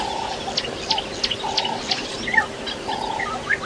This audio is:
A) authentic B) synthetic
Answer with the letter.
A